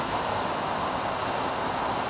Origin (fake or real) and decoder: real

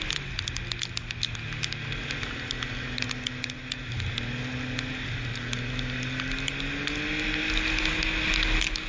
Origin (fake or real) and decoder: real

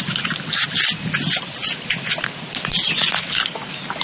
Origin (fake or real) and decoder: real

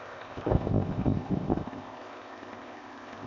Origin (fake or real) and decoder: fake, codec, ZipCodec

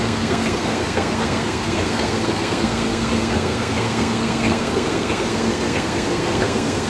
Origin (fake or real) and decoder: fake, codec, SNAC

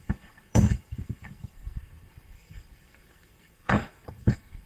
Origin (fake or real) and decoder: fake, codec, SNAC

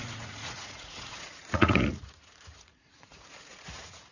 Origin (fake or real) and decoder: fake, vocoder, Vocos